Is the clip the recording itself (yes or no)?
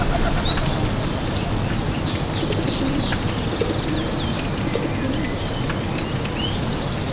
yes